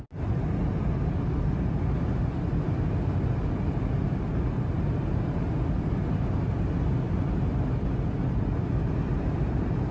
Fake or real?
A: real